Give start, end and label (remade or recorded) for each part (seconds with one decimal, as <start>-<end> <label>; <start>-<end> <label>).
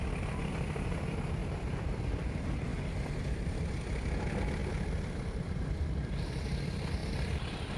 0.0-2.7 remade; 2.7-3.2 recorded; 3.2-7.8 remade